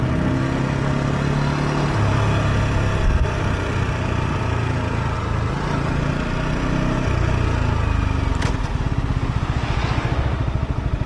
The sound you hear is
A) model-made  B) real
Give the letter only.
B